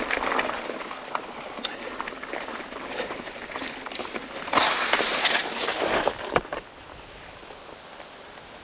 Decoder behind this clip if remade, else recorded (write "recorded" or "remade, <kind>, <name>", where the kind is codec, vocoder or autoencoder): recorded